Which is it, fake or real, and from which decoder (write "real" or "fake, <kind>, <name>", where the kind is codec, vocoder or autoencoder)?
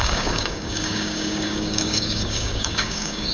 fake, codec, DAC